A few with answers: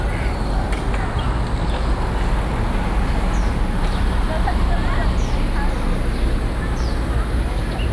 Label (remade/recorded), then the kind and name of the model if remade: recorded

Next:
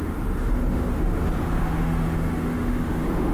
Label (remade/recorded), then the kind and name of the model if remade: remade, autoencoder, DAC-VAE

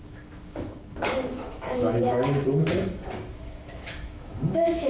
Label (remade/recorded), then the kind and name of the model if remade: remade, autoencoder, DAC-VAE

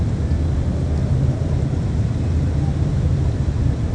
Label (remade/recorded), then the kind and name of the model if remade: recorded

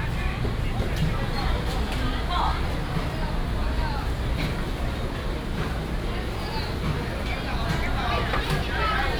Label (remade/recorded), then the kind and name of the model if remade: recorded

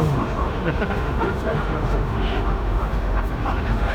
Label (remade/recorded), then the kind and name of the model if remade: remade, autoencoder, DAC-VAE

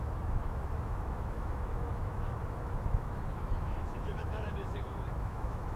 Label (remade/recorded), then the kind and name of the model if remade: remade, autoencoder, DAC-VAE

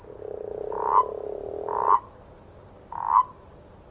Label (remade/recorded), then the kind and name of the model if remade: recorded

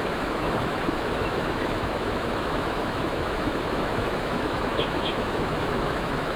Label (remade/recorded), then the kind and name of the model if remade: remade, autoencoder, DAC-VAE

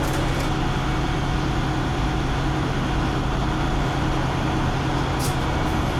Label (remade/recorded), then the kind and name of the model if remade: recorded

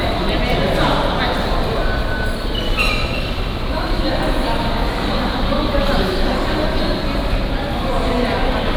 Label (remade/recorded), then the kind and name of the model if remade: recorded